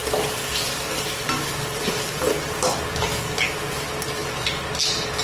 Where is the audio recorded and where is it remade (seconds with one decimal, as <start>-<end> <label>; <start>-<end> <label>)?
0.0-5.2 recorded